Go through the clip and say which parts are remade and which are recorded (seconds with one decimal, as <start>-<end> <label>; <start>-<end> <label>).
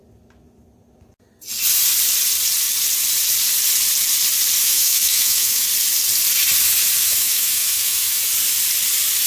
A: 0.0-4.6 recorded; 4.6-5.7 remade; 5.7-7.0 recorded; 7.0-8.2 remade; 8.2-9.3 recorded